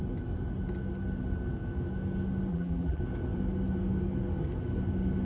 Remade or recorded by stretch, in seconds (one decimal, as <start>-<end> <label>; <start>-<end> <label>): 0.0-2.5 recorded; 2.5-3.0 remade; 3.0-5.2 recorded